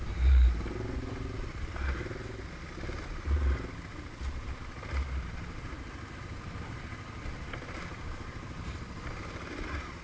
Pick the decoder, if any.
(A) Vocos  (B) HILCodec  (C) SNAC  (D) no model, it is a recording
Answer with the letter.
D